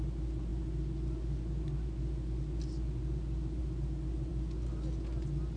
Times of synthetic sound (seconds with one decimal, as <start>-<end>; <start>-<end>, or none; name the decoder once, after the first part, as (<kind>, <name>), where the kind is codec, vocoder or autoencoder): none